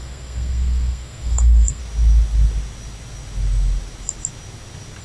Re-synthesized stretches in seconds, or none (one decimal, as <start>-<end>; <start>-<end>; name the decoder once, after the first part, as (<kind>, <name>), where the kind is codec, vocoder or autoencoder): 0.0-1.8 (codec, SNAC)